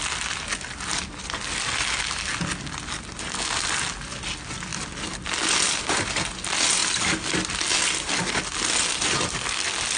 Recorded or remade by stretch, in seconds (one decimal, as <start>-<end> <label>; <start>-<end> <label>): 0.0-10.0 recorded